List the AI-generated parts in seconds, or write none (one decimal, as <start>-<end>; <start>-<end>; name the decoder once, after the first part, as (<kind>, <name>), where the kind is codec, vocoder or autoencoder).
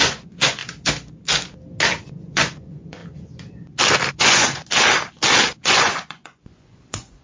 0.0-0.6 (vocoder, Vocos); 2.0-3.0; 4.1-4.6; 5.4-7.2